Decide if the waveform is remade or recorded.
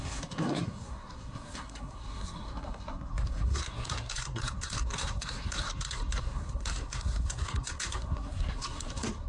remade